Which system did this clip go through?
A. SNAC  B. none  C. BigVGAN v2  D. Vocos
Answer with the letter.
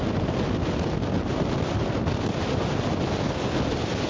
B